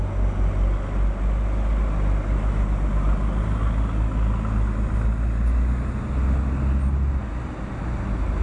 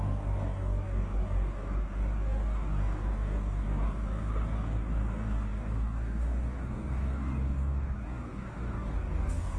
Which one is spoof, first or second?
second